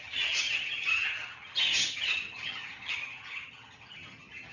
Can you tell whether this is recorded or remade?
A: remade